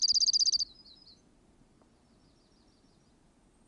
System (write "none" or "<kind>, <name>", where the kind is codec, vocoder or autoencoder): none